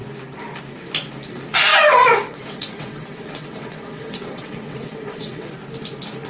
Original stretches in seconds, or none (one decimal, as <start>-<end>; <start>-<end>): 0.0-1.7; 5.5-6.3